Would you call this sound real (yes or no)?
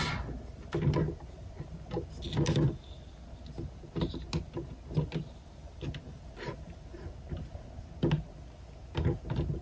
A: yes